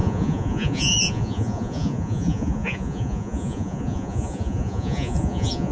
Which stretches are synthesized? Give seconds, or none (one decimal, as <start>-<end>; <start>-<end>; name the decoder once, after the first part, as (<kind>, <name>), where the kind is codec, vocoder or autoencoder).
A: 0.0-5.7 (vocoder, Vocos)

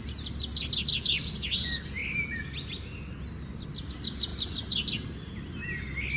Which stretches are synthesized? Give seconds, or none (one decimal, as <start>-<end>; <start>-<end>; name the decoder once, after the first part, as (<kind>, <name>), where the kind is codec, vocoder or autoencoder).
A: none

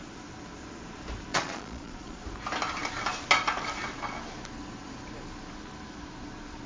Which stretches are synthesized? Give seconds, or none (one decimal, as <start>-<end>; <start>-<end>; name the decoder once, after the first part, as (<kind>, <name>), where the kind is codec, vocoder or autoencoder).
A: 1.3-2.2 (vocoder, Vocos)

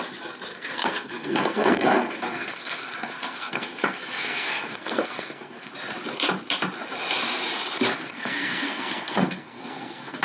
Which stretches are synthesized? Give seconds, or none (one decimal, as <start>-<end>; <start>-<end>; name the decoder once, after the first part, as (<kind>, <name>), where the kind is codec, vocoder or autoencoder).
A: 0.5-5.7 (codec, SNAC); 7.9-10.2

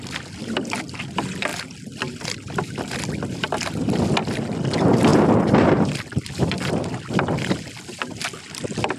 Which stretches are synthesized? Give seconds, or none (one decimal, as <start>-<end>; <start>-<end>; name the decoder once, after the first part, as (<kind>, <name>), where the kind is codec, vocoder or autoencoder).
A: 5.1-6.3 (vocoder, BigVGAN v2)

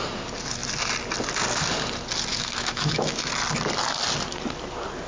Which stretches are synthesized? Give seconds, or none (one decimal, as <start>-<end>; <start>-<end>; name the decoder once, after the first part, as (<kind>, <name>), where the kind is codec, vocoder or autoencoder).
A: 2.3-3.3 (autoencoder, DAC-VAE)

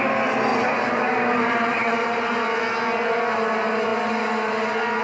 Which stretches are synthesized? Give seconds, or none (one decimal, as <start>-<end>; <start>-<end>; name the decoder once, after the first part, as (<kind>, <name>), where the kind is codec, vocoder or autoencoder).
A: 0.5-2.3 (vocoder, BigVGAN v2)